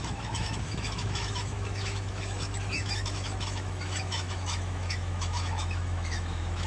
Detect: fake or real fake